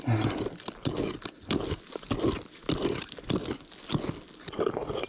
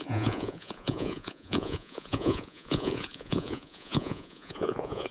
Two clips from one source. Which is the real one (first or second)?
first